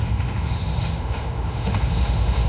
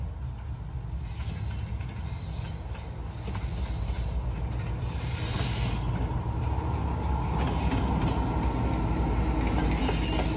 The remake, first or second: first